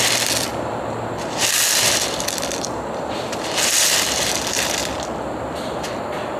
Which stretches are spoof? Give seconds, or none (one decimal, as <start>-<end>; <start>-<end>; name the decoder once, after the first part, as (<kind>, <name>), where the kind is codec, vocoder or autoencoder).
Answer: 0.5-4.3 (vocoder, BigVGAN v2)